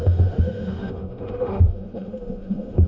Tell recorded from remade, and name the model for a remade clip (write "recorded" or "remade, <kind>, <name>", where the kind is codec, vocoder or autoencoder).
remade, autoencoder, DAC-VAE